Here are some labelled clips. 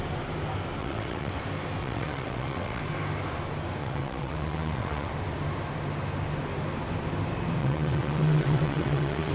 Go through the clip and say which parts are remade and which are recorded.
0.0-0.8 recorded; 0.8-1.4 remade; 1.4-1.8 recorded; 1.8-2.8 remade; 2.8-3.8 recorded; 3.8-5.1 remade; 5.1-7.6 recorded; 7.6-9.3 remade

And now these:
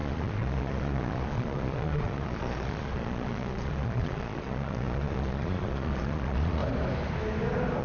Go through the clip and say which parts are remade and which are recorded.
0.0-6.6 remade; 6.6-7.8 recorded

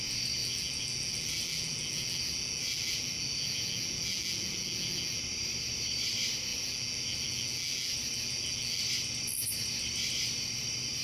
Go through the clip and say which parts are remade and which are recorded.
0.0-0.4 recorded; 0.4-5.2 remade; 5.2-6.5 recorded; 6.5-8.8 remade; 8.8-11.0 recorded